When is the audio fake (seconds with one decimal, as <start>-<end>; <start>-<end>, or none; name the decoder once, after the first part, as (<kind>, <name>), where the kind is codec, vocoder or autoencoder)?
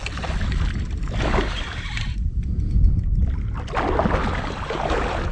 none